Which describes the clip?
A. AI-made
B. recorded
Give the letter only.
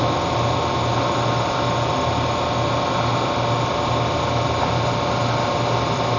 B